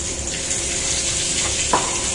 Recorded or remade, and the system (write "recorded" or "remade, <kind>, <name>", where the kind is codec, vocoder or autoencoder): recorded